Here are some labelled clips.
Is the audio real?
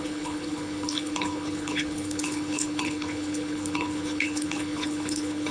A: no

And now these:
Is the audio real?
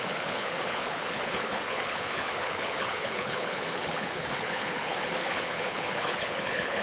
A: no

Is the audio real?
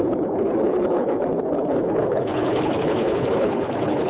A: no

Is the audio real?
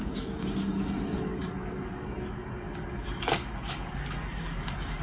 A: no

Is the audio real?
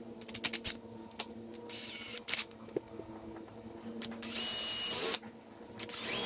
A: yes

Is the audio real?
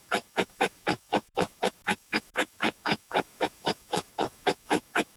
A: no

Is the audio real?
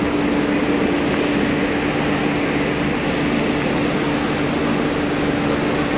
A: yes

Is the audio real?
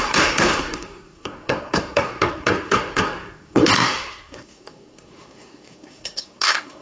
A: no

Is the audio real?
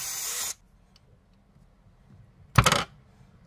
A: yes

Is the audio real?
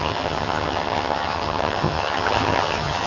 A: no